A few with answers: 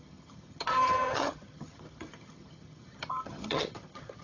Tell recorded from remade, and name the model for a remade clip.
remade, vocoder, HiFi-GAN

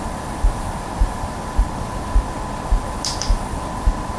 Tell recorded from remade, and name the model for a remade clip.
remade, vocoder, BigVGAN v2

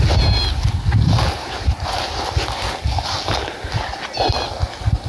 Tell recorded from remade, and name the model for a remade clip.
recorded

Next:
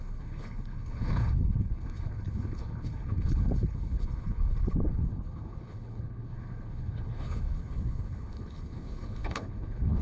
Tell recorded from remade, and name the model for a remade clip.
remade, codec, HILCodec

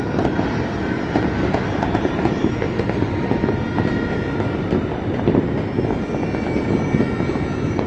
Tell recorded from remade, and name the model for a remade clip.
recorded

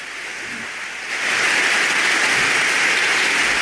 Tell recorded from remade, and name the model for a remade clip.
recorded